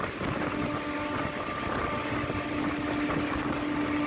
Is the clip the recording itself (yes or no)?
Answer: yes